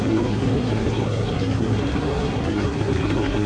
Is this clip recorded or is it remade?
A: remade